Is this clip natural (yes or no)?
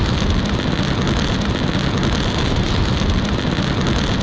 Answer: yes